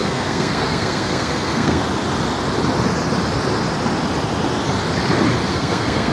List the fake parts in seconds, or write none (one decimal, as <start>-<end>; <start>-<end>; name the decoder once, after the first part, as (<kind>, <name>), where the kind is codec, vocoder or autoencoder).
0.0-1.8 (codec, SNAC); 5.5-6.1